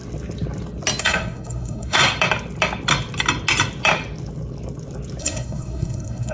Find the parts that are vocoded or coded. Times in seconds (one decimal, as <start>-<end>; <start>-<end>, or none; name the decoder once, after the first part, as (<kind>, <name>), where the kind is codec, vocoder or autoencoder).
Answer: 1.0-2.0 (codec, SNAC); 5.2-6.3